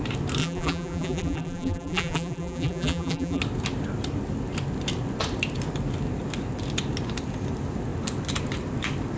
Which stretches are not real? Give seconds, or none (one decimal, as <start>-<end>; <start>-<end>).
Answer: 0.4-3.4